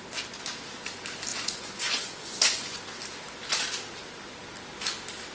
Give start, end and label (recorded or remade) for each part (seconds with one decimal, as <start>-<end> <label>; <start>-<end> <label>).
0.0-1.3 recorded; 1.3-2.8 remade; 2.8-5.3 recorded